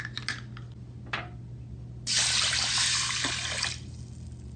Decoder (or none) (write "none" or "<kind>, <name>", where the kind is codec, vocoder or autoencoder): none